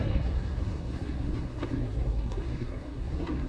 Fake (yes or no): yes